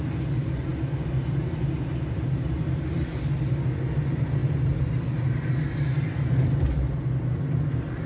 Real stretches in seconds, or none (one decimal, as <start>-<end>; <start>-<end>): 0.0-8.1